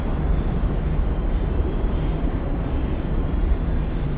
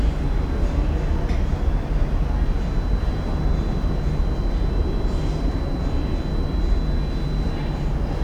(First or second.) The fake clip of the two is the first